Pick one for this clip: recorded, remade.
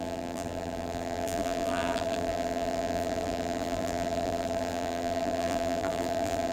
remade